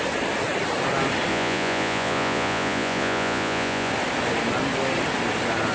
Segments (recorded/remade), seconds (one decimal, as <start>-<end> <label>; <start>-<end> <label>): 0.0-1.3 recorded; 1.3-3.9 remade; 3.9-5.7 recorded